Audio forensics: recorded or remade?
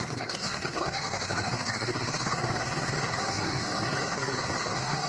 remade